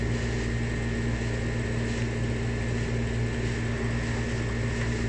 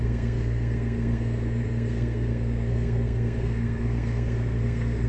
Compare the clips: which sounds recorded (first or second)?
first